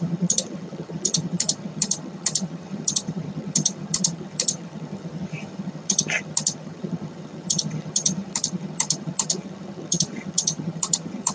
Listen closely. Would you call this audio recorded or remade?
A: remade